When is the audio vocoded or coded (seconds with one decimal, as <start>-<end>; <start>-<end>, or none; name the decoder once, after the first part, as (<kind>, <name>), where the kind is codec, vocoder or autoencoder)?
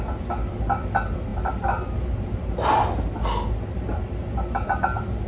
none